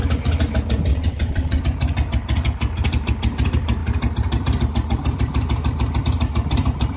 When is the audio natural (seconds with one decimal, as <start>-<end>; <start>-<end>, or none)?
0.0-0.9; 1.6-7.0